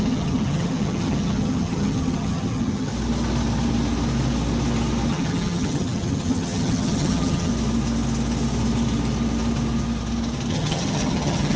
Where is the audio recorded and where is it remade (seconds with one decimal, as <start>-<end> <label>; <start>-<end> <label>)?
0.0-2.9 remade; 2.9-5.1 recorded; 5.1-7.5 remade; 7.5-10.5 recorded; 10.5-11.6 remade